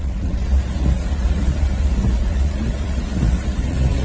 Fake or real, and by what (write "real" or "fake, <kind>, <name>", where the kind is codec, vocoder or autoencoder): fake, vocoder, Vocos